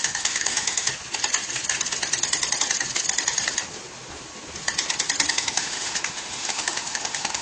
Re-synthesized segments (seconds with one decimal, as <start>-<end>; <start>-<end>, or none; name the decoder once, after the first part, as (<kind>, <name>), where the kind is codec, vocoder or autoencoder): 0.0-0.9 (autoencoder, DAC-VAE); 5.3-7.4